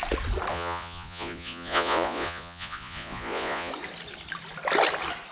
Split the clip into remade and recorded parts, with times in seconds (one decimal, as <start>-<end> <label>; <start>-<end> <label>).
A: 0.0-0.5 recorded; 0.5-3.7 remade; 3.7-5.3 recorded